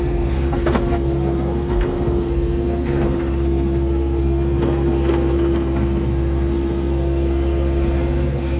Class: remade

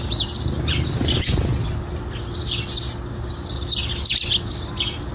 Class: recorded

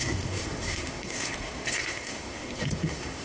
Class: remade